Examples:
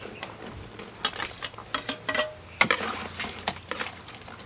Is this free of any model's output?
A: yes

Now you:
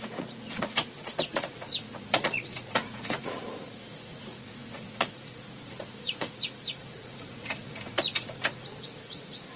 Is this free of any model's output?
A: no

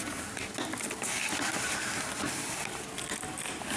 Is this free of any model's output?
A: yes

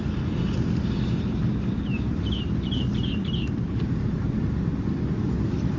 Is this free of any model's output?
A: yes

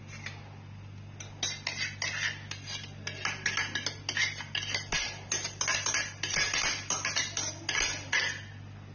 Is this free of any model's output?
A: yes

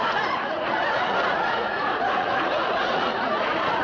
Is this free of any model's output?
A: no